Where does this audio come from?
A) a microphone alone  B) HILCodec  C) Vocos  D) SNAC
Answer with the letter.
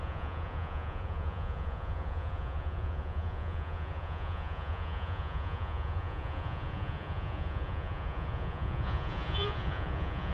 C